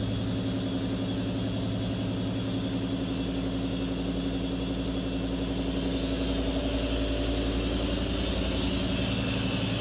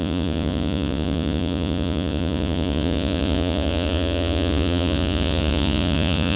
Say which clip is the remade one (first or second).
second